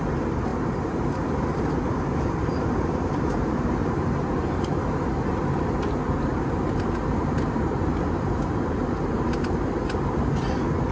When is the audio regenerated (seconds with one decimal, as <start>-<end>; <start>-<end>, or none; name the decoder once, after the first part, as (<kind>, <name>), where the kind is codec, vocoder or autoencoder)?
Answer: 0.0-10.9 (vocoder, BigVGAN v2)